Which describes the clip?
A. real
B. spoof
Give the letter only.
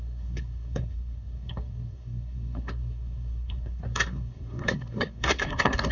B